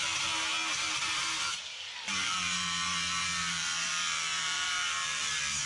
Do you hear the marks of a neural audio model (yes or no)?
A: yes